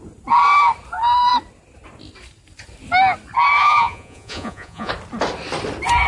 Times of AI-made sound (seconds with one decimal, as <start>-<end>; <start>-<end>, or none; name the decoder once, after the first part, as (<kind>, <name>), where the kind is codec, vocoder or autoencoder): 3.6-4.9 (vocoder, Vocos)